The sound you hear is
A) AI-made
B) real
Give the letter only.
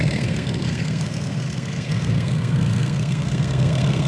A